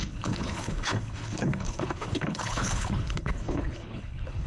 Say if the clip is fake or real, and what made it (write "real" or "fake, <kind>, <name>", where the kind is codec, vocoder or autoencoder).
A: fake, codec, HILCodec